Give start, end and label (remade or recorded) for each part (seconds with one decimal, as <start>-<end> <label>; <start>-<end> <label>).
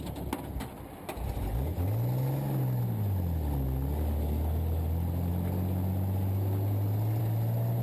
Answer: 0.0-7.8 recorded